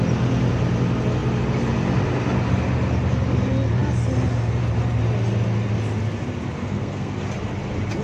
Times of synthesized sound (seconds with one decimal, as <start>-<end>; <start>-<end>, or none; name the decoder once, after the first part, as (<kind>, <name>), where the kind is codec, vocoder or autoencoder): 6.6-7.1 (codec, SNAC)